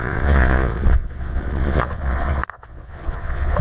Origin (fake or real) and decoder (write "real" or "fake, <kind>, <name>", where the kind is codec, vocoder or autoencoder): fake, vocoder, Vocos